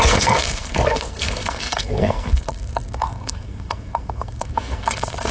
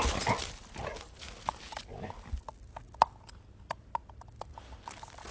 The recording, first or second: second